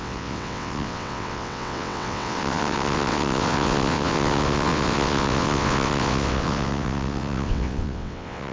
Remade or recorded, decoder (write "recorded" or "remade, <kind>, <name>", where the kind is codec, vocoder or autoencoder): remade, vocoder, WaveNeXt